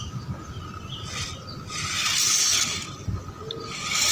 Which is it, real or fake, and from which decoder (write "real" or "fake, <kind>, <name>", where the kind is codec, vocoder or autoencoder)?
real